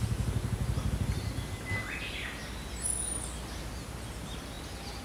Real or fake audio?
real